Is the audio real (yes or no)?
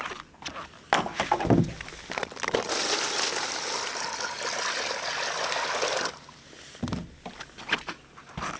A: yes